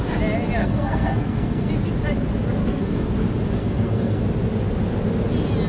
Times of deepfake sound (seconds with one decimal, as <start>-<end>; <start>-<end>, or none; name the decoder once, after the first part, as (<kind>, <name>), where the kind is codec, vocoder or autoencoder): 0.6-1.7 (codec, SNAC); 2.6-3.1; 3.6-4.2